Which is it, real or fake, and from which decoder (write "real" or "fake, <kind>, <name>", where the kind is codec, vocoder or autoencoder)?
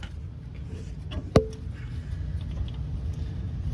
real